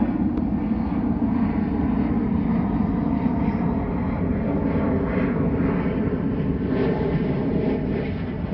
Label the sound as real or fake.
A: real